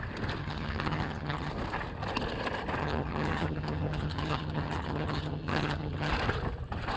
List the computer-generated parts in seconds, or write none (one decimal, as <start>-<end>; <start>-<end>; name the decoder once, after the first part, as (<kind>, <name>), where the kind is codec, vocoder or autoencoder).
0.4-1.5 (vocoder, HiFi-GAN); 2.8-6.1